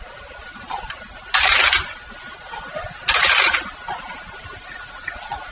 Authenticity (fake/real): real